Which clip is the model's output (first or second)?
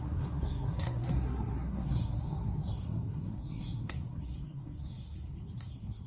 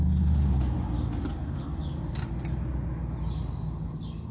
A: first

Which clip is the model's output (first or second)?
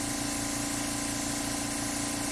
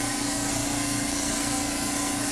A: second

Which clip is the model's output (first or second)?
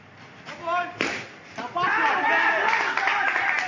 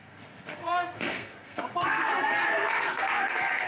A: second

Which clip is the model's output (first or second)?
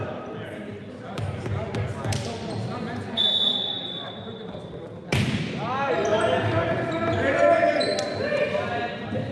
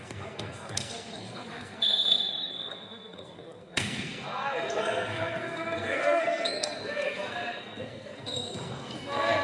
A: second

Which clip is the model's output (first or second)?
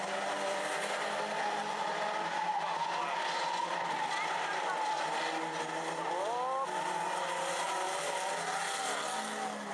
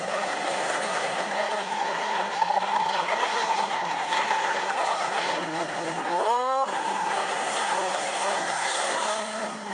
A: second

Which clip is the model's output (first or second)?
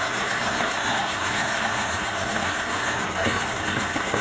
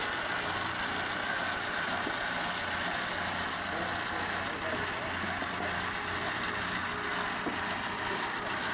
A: first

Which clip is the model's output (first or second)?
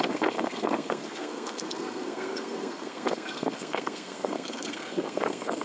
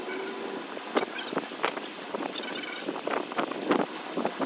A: first